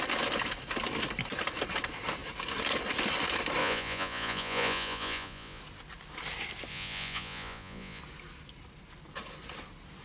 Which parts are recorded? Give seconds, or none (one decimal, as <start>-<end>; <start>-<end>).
0.0-3.6; 5.6-6.7; 8.0-10.0